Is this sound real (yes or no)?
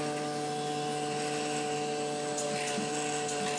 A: yes